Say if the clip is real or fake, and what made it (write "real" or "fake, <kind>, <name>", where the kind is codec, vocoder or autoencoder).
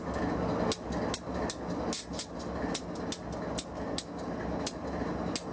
real